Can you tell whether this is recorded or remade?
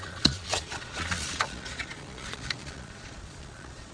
remade